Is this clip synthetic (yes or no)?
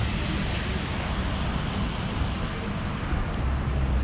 no